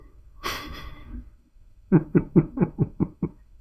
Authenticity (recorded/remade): remade